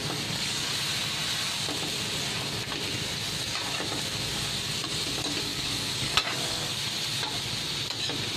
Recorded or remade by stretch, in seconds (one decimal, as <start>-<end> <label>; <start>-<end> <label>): 0.0-0.7 remade; 0.7-5.5 recorded; 5.5-6.8 remade; 6.8-8.4 recorded